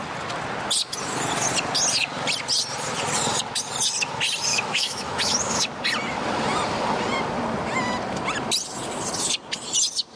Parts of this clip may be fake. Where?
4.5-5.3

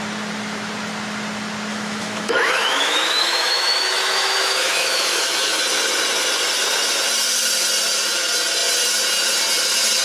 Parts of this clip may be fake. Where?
1.7-5.6

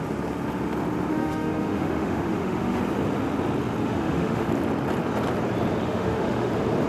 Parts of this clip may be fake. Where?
1.1-2.8; 3.8-4.5; 5.8-6.5

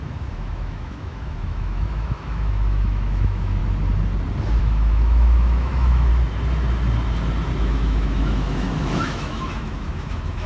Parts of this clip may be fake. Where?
0.0-3.6; 4.6-6.1; 7.6-10.5